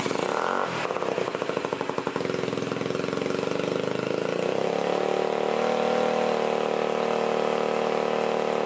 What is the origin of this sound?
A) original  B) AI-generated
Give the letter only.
A